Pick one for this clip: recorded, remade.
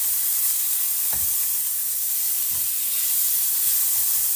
remade